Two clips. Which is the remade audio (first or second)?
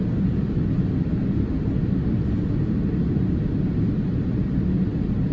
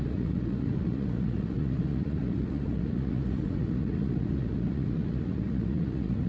second